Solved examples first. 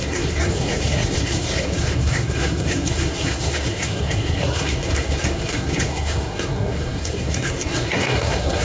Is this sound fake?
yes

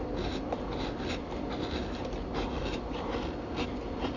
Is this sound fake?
no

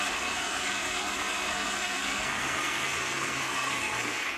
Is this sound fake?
yes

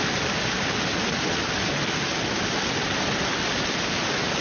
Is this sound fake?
no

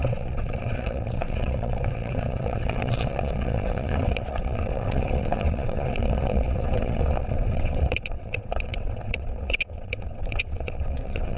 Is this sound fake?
yes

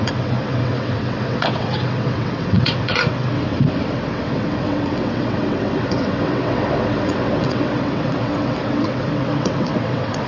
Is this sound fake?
yes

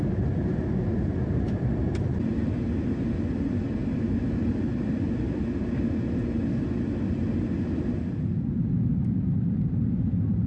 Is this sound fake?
no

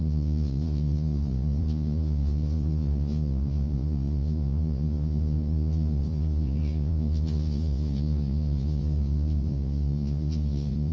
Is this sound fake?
yes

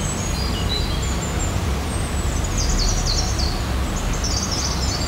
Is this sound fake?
no